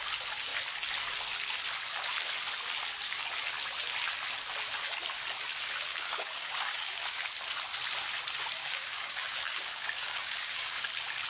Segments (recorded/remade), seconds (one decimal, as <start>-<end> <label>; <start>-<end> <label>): 0.0-5.9 recorded; 5.9-7.2 remade; 7.2-8.6 recorded; 8.6-10.9 remade; 10.9-11.3 recorded